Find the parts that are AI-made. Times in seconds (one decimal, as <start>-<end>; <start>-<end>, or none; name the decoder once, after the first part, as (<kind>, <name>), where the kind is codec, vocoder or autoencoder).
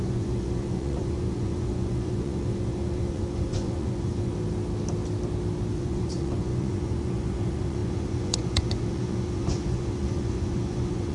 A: 0.0-4.3 (vocoder, Vocos); 5.8-11.1